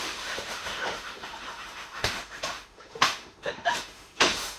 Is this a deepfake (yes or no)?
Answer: yes